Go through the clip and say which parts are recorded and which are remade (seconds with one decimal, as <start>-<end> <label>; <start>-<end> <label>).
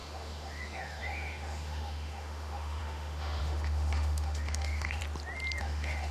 0.0-5.0 remade; 5.0-5.6 recorded; 5.6-6.1 remade